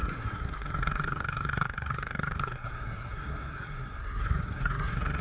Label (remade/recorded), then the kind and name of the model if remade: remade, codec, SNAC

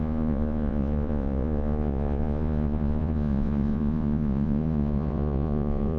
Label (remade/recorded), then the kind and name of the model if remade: remade, vocoder, Vocos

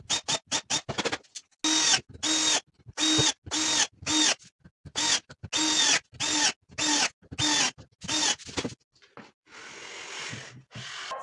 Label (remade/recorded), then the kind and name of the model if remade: recorded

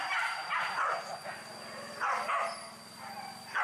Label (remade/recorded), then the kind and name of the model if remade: recorded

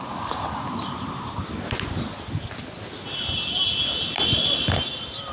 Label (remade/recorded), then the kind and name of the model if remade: recorded